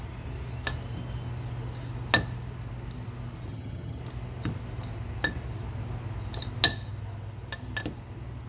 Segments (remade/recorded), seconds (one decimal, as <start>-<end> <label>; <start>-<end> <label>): 0.0-3.5 recorded; 3.5-4.0 remade; 4.0-8.5 recorded